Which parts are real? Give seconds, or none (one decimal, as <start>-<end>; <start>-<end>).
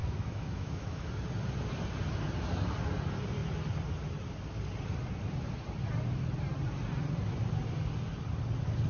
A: 1.1-8.9